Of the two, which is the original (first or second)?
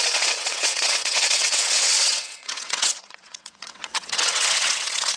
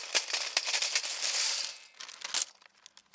second